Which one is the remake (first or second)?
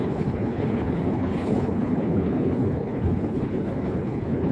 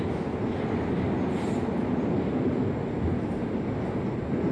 first